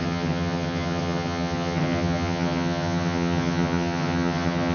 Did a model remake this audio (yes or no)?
yes